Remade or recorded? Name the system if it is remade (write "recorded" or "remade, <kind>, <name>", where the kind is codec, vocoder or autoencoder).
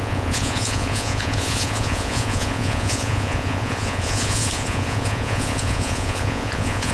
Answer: remade, vocoder, Vocos